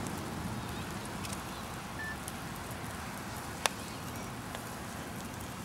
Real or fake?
real